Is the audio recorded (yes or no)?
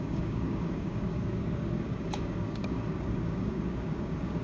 no